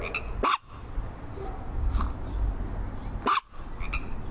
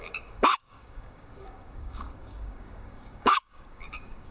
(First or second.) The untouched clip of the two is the first